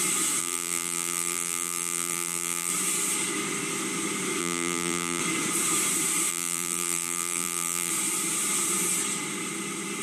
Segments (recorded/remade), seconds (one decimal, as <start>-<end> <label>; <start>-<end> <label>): 0.0-0.4 recorded; 0.4-2.7 remade; 2.7-4.4 recorded; 4.4-5.2 remade; 5.2-6.3 recorded; 6.3-7.9 remade; 7.9-10.0 recorded